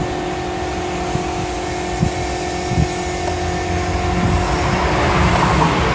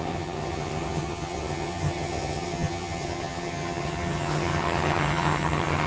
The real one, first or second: first